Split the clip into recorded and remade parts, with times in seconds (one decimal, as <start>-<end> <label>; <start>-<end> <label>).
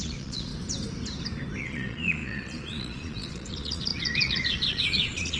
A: 0.0-0.5 remade; 0.5-1.6 recorded; 1.6-5.4 remade